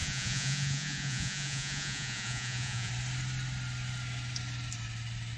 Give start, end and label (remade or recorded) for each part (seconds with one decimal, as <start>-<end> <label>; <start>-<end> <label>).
0.0-2.9 remade; 2.9-5.4 recorded